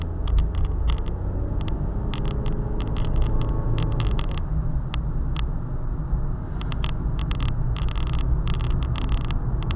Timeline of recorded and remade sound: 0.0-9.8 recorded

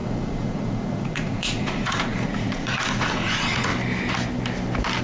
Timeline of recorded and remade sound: 0.0-3.7 remade; 3.7-5.0 recorded